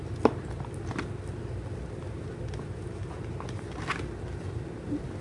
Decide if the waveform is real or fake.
real